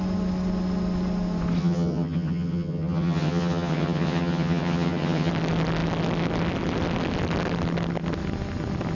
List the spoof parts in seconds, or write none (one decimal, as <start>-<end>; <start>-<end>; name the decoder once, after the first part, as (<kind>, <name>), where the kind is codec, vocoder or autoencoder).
1.6-5.3 (vocoder, HiFi-GAN)